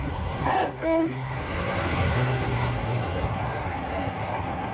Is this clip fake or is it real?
fake